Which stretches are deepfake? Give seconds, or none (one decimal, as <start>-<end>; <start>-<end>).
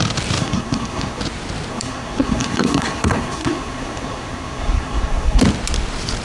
0.4-1.2; 1.7-5.4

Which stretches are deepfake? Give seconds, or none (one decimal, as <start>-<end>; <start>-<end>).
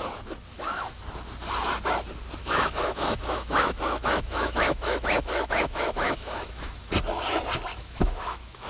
0.5-1.0; 2.4-6.9; 7.7-8.7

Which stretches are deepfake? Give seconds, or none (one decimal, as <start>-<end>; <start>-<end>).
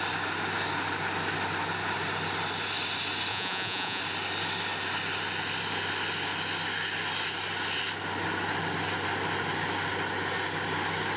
3.3-4.0